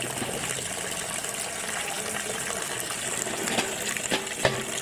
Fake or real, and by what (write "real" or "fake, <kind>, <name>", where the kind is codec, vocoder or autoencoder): real